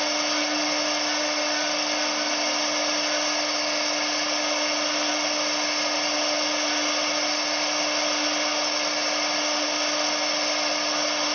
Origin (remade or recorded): recorded